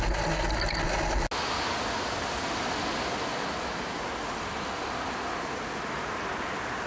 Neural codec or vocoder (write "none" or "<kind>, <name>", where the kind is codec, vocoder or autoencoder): none